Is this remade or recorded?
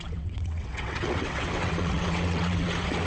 remade